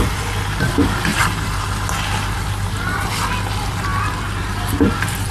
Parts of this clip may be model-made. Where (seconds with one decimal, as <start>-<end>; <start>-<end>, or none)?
1.1-3.1